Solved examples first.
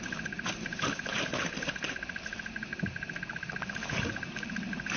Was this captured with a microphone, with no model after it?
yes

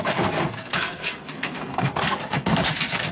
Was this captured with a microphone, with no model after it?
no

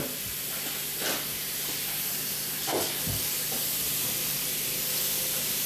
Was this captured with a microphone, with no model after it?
yes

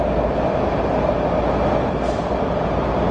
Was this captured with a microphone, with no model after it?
yes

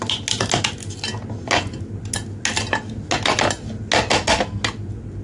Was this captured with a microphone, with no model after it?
yes